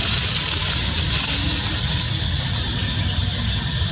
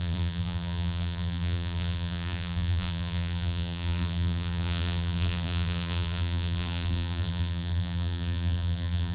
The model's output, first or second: second